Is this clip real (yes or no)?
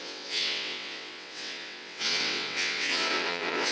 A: no